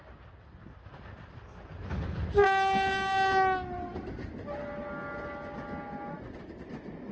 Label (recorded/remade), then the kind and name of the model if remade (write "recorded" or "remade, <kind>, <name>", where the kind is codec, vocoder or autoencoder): recorded